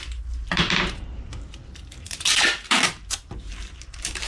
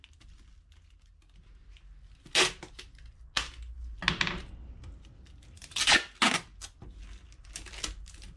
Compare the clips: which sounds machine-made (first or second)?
first